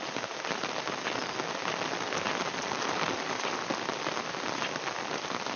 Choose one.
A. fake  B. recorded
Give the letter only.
B